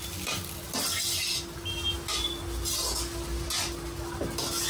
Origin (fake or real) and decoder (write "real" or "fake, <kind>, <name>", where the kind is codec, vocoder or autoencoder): real